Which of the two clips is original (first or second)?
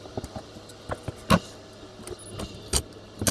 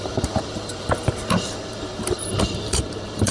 first